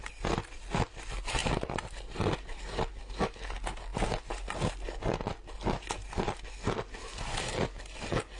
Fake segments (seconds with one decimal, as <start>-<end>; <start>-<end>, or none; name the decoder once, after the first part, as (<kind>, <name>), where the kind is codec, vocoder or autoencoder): none